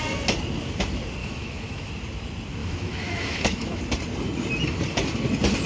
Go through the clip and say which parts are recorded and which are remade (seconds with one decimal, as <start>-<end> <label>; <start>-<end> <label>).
0.0-1.2 recorded; 1.2-1.9 remade; 1.9-2.6 recorded; 2.6-3.8 remade; 3.8-5.7 recorded